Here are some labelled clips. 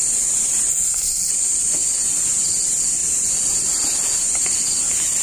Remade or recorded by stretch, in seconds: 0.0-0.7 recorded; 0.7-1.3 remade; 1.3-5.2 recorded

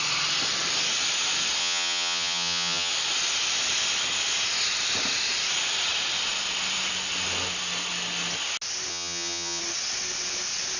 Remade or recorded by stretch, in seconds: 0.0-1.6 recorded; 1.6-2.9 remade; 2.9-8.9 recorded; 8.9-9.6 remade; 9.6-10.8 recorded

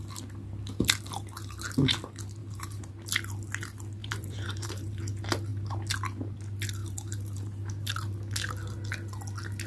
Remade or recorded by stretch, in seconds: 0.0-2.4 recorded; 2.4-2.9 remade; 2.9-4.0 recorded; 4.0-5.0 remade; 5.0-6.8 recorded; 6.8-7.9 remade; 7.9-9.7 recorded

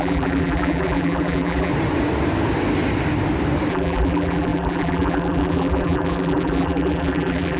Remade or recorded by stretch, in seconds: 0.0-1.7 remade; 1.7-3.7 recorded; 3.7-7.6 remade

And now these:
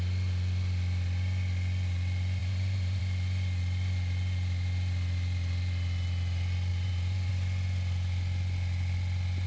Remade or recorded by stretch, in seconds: 0.0-2.4 recorded; 2.4-3.0 remade; 3.0-6.7 recorded; 6.7-7.3 remade; 7.3-9.5 recorded

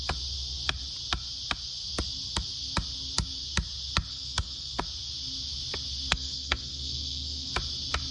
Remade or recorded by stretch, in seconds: 0.0-4.1 recorded; 4.1-4.8 remade; 4.8-6.1 recorded; 6.1-7.5 remade; 7.5-8.1 recorded